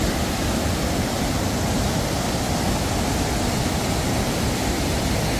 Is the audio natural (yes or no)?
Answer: no